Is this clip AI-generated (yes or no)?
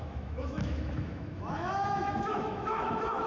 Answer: yes